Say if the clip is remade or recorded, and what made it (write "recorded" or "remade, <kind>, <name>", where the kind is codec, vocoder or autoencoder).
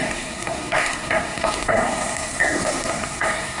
remade, codec, SNAC